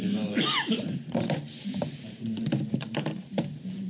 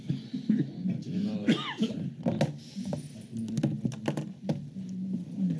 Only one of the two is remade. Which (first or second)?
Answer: first